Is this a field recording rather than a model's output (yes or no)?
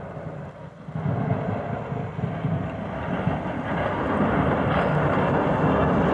yes